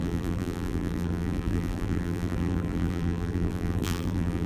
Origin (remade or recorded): remade